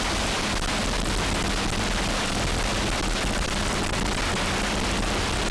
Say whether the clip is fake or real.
real